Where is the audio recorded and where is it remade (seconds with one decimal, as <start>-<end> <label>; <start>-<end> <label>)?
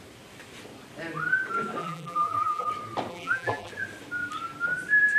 0.0-1.8 recorded; 1.8-2.7 remade; 2.7-3.1 recorded; 3.1-3.7 remade; 3.7-5.2 recorded